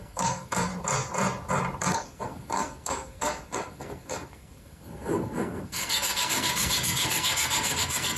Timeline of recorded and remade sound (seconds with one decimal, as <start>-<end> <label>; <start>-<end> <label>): 0.0-0.7 remade; 0.7-1.8 recorded; 1.8-8.2 remade